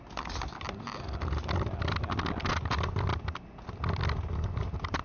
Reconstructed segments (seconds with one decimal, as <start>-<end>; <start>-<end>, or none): none